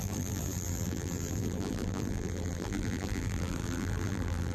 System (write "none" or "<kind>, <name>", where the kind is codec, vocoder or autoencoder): vocoder, BigVGAN v2